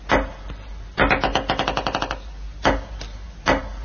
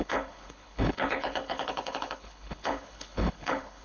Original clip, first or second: first